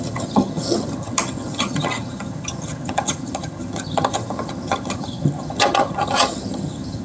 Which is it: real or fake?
fake